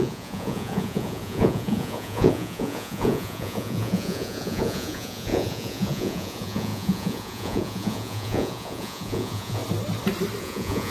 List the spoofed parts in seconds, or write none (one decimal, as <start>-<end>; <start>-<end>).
0.0-9.6; 10.4-10.9